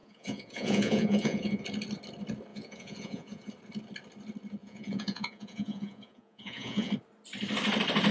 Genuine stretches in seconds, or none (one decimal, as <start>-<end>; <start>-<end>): 1.6-2.5; 3.5-4.6; 6.9-8.1